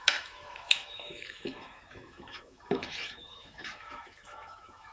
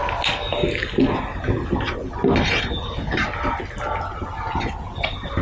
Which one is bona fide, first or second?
second